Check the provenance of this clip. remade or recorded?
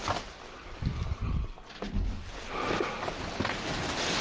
recorded